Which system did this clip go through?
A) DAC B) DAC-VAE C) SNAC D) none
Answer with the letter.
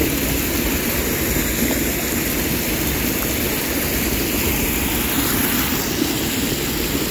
D